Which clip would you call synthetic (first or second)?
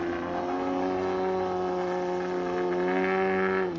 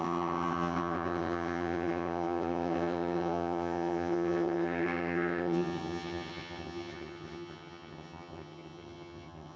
second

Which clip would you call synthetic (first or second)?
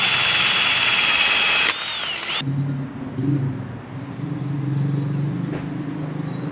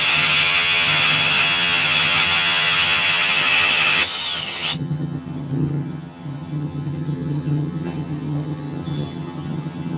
second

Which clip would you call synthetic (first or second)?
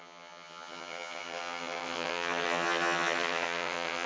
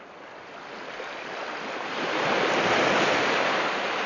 first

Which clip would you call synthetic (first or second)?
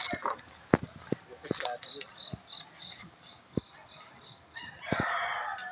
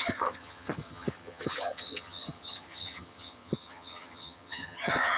second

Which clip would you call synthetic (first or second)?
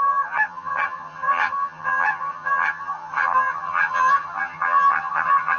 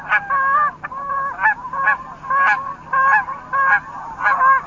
first